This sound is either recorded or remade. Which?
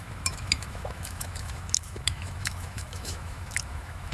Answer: remade